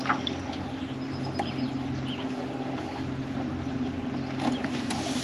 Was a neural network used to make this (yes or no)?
no